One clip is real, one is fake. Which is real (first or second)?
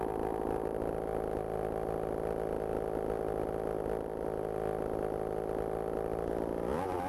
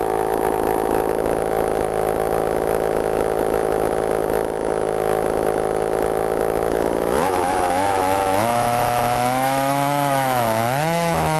first